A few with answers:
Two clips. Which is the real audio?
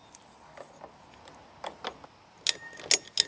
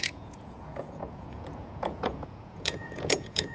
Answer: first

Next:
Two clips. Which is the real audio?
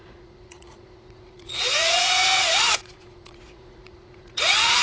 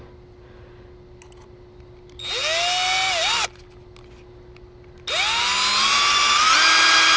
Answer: second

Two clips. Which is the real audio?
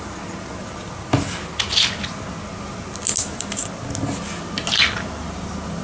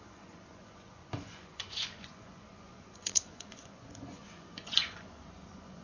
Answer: first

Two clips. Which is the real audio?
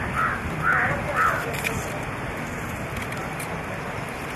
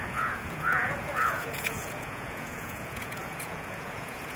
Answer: first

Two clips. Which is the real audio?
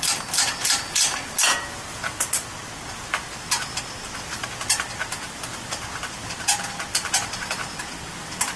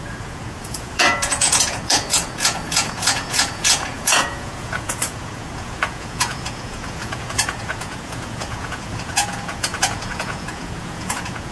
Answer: first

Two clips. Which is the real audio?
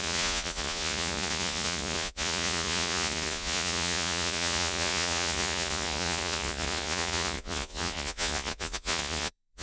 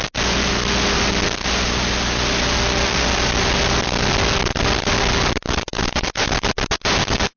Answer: second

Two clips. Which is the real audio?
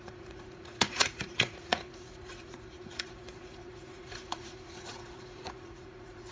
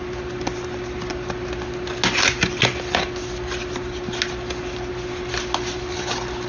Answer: second